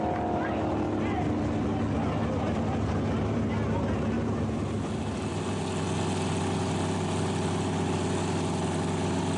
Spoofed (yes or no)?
no